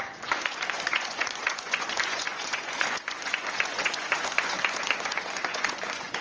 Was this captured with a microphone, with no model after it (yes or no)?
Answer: no